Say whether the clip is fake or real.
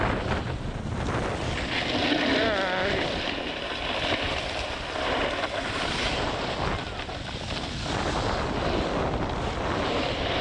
real